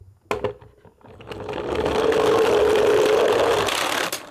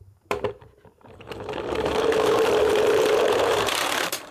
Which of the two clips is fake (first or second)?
second